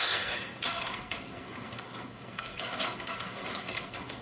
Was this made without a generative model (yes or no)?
no